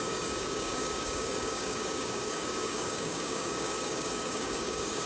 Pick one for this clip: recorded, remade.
remade